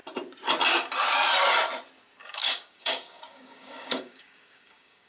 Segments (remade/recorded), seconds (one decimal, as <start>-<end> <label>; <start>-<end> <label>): 0.0-2.2 recorded; 2.2-5.1 remade